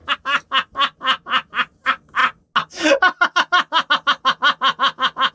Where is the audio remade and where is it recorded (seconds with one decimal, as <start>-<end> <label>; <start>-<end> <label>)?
0.0-5.3 recorded